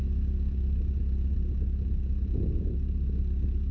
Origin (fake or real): real